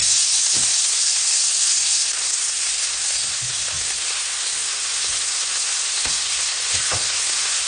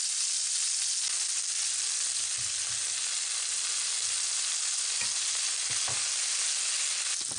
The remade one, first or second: first